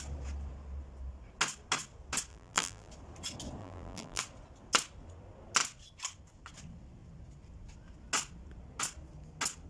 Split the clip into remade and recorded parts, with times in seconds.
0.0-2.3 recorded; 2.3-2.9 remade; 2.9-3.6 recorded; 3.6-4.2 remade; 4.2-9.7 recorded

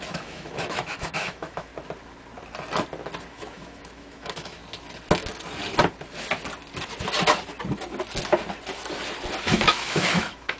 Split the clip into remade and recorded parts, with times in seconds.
0.0-1.7 remade; 1.7-3.3 recorded; 3.3-4.6 remade; 4.6-9.4 recorded; 9.4-10.6 remade

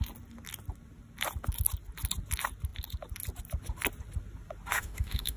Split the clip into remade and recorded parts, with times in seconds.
0.0-4.7 recorded; 4.7-5.4 remade

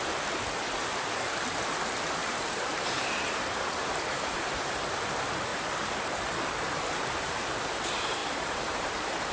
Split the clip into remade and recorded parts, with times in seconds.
0.0-2.2 recorded; 2.2-4.7 remade; 4.7-8.2 recorded; 8.2-9.3 remade

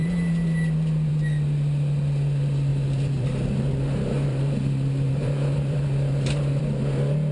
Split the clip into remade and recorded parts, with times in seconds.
0.0-2.7 recorded; 2.7-6.6 remade; 6.6-7.3 recorded